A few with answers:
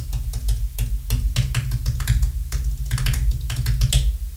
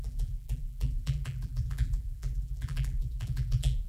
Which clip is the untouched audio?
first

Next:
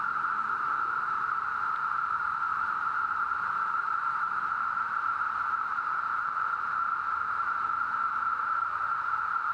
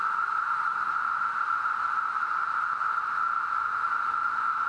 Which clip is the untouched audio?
second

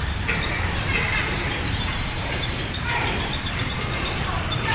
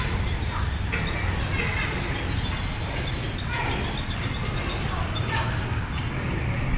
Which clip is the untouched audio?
second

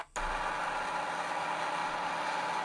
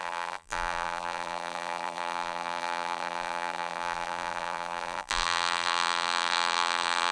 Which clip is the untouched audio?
first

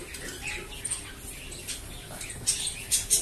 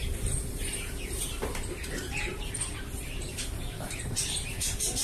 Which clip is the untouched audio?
first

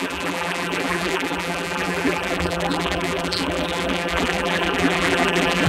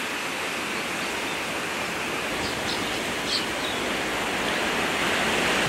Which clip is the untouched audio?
second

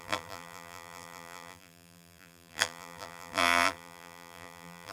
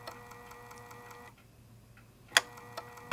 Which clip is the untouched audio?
second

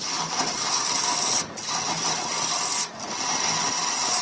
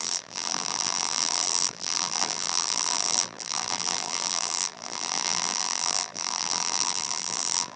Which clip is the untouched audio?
first